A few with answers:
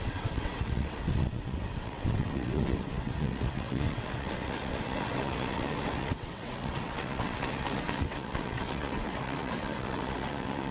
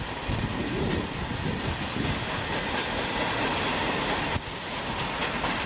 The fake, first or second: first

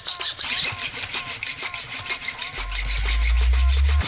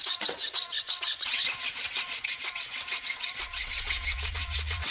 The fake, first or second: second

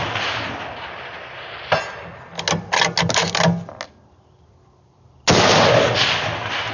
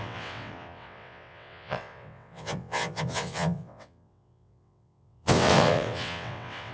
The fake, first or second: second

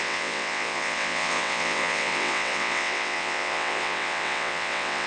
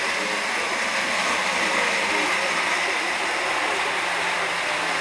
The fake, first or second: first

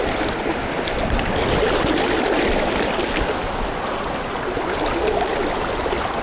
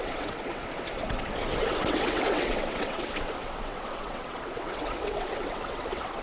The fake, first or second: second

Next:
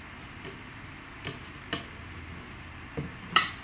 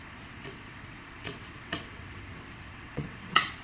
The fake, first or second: second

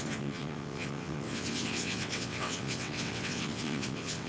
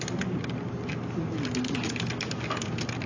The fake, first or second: first